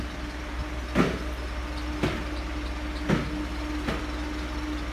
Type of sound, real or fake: real